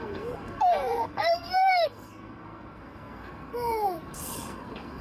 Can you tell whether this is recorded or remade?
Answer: remade